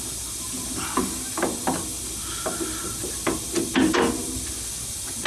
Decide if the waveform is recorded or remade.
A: recorded